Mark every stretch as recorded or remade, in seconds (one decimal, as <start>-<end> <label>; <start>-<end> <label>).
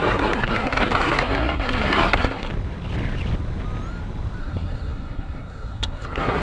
0.0-2.5 remade; 2.5-4.4 recorded; 4.4-6.4 remade